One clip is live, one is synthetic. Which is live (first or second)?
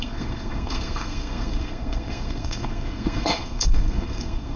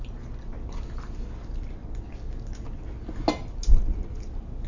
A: second